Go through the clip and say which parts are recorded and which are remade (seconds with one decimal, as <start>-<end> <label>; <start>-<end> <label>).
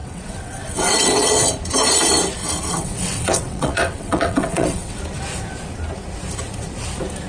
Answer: 0.0-1.5 remade; 1.5-2.4 recorded; 2.4-5.0 remade; 5.0-7.3 recorded